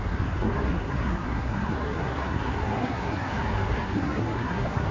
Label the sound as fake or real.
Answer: fake